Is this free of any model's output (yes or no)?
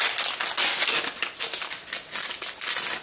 yes